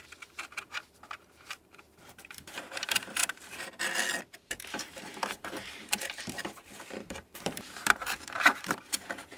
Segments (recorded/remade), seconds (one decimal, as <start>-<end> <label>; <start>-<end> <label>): 0.0-3.2 remade; 3.2-4.2 recorded; 4.2-9.4 remade